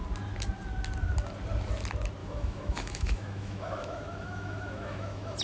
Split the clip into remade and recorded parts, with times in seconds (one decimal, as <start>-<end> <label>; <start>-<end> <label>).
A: 0.0-2.2 recorded; 2.2-5.4 remade